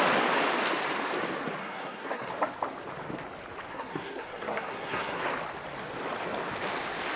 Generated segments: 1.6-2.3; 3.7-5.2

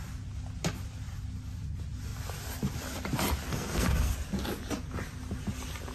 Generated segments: 3.5-4.1

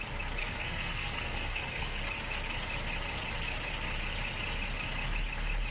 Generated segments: 0.4-2.0

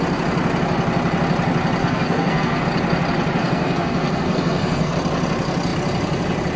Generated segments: 1.8-2.6; 3.4-4.9

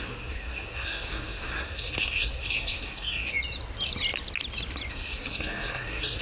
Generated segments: 0.0-3.3; 4.9-6.2